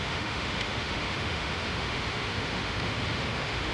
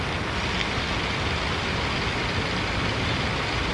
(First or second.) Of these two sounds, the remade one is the first